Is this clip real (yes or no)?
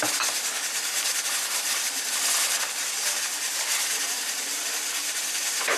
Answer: no